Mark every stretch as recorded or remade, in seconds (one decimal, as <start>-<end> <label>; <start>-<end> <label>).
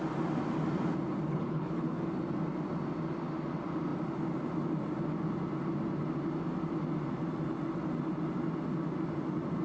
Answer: 0.0-1.3 recorded; 1.3-2.0 remade; 2.0-9.6 recorded